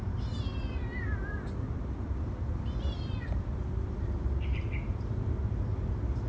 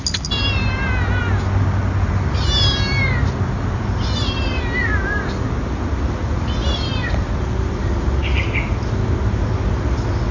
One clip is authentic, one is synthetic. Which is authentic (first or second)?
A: second